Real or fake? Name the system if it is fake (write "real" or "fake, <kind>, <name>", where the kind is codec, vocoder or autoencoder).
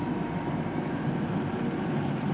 fake, vocoder, BigVGAN v2